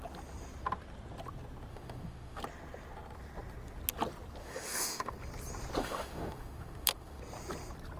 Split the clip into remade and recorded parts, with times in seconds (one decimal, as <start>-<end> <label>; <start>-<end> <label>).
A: 0.0-1.7 recorded; 1.7-2.4 remade; 2.4-4.4 recorded; 4.4-5.1 remade; 5.1-5.8 recorded; 5.8-7.2 remade; 7.2-8.0 recorded